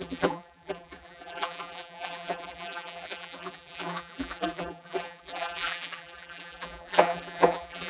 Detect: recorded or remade remade